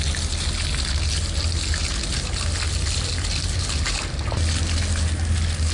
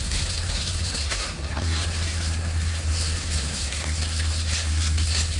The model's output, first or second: second